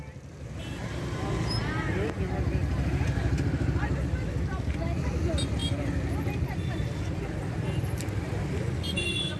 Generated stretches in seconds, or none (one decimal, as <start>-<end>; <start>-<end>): 8.6-9.4